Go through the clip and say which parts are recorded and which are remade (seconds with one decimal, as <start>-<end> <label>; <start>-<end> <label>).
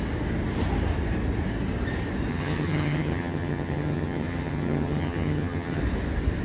0.0-2.3 recorded; 2.3-5.8 remade; 5.8-6.4 recorded